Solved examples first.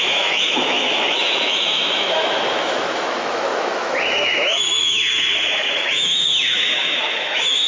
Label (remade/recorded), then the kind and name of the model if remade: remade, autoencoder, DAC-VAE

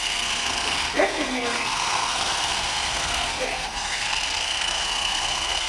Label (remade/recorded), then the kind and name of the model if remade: remade, codec, SNAC